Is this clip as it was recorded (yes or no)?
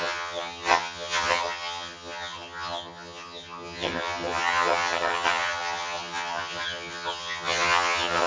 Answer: no